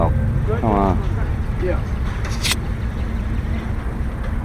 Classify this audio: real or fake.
real